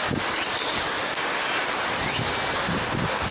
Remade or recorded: recorded